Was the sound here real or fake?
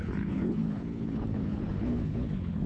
fake